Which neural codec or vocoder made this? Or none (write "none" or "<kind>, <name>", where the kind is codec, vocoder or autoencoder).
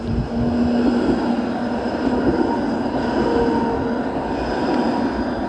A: none